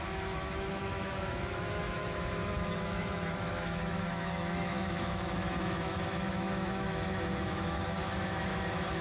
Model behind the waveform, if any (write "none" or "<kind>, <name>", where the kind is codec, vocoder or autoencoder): autoencoder, DAC-VAE